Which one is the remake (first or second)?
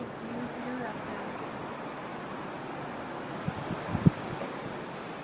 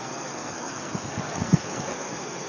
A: second